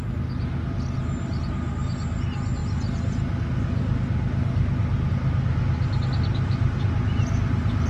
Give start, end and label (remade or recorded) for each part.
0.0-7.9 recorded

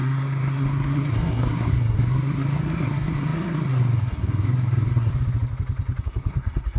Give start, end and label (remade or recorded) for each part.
0.0-5.1 remade; 5.1-6.0 recorded; 6.0-6.8 remade